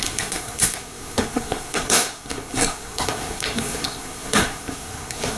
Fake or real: fake